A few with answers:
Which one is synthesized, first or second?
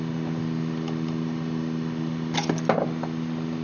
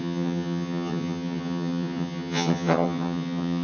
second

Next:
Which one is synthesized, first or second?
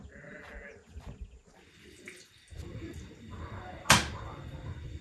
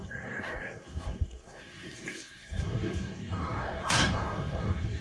second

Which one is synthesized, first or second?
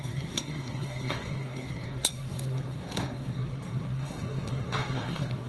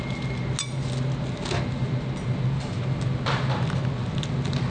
first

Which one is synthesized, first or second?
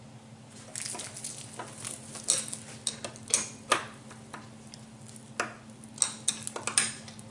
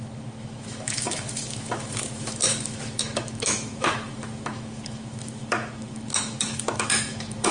second